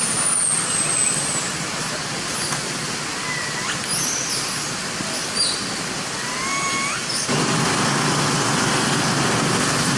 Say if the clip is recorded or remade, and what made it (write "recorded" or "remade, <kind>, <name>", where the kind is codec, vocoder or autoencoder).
recorded